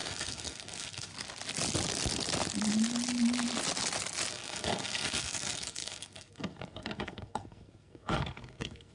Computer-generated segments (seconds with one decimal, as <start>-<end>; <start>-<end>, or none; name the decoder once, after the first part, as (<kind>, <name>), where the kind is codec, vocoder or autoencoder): 0.0-1.1 (codec, SNAC); 4.3-8.9